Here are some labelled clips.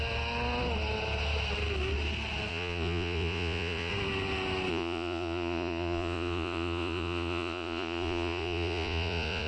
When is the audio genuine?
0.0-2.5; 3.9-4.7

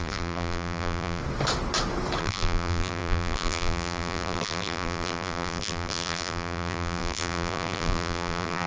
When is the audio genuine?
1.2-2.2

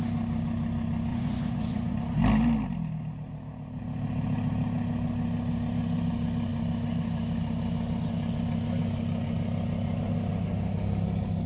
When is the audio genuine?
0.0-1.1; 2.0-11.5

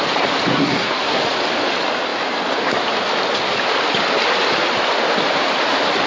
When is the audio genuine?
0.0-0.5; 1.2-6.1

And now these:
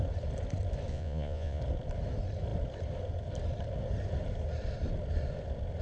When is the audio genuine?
0.0-0.9; 1.6-5.8